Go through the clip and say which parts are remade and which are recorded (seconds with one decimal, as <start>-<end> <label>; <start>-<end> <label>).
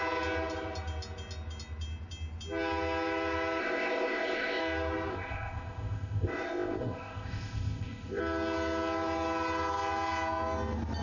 0.0-3.6 recorded; 3.6-4.6 remade; 4.6-5.1 recorded; 5.1-8.2 remade; 8.2-11.0 recorded